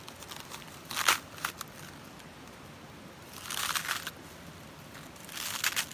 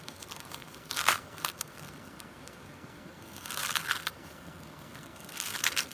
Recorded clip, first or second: first